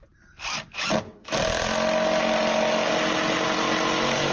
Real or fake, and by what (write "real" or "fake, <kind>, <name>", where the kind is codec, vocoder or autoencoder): real